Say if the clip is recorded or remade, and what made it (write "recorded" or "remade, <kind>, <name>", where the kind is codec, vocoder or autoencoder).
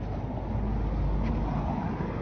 recorded